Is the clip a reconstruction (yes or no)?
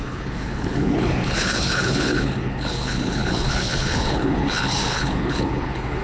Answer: yes